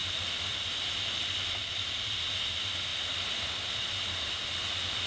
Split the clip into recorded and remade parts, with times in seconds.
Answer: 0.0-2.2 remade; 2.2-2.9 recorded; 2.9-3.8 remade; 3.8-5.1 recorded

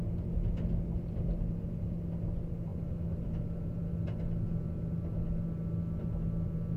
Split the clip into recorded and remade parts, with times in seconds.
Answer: 0.0-6.8 recorded

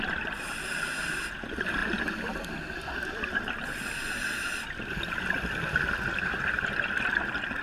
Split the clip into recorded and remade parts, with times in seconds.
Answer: 0.0-7.6 recorded

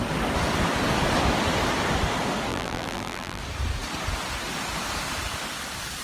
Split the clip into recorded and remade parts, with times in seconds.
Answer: 0.0-2.5 recorded; 2.5-3.4 remade; 3.4-6.0 recorded

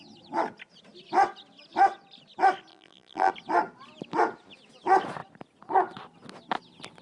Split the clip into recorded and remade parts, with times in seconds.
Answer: 0.0-2.7 recorded; 2.7-3.3 remade; 3.3-7.0 recorded

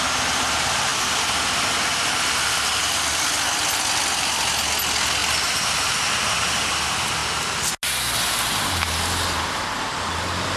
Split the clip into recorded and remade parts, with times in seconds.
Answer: 0.0-0.9 recorded; 0.9-1.4 remade; 1.4-10.6 recorded

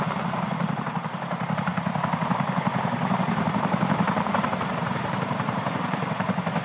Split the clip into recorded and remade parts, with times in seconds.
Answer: 0.0-6.6 remade